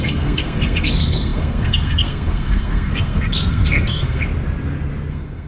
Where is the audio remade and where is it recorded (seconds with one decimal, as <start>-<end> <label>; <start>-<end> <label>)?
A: 0.0-4.3 remade; 4.3-5.1 recorded; 5.1-5.5 remade